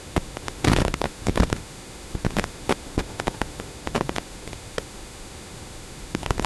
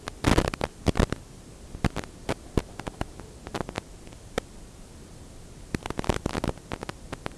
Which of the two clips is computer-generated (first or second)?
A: first